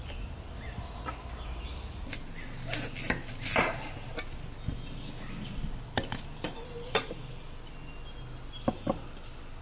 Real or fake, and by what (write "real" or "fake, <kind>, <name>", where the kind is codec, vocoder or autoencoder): real